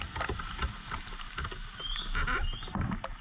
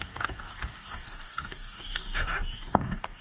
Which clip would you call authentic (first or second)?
first